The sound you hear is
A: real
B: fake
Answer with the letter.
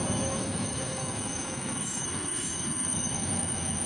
B